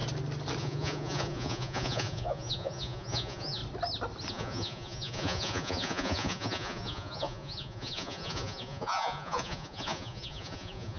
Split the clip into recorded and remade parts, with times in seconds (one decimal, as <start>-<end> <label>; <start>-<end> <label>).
0.0-0.6 recorded; 0.6-3.6 remade; 3.6-4.3 recorded; 4.3-11.0 remade